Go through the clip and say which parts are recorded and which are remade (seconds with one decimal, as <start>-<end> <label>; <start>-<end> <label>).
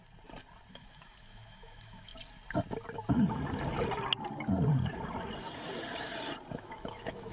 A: 0.0-0.7 recorded; 0.7-2.1 remade; 2.1-6.5 recorded; 6.5-7.3 remade